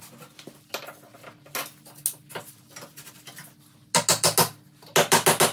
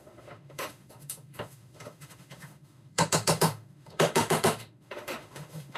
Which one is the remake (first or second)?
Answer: second